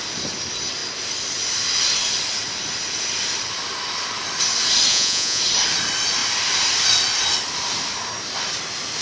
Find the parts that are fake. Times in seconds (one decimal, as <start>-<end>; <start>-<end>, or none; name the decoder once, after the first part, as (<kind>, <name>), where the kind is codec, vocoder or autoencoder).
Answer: 4.9-5.4 (vocoder, Vocos)